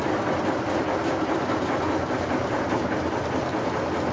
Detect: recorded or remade recorded